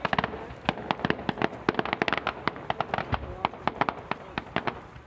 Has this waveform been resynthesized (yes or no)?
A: no